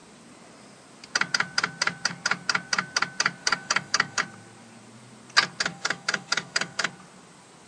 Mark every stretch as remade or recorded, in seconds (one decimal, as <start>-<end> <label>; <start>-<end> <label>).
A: 0.0-3.4 recorded; 3.4-4.2 remade; 4.2-5.7 recorded; 5.7-6.9 remade; 6.9-7.7 recorded